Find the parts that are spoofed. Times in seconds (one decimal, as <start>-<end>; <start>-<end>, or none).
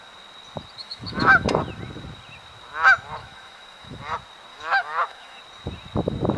0.8-1.5; 3.2-4.0; 4.5-5.4